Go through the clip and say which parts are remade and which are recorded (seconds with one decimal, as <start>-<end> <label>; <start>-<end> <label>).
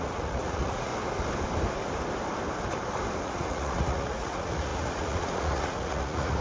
0.0-0.9 remade; 0.9-3.2 recorded; 3.2-6.4 remade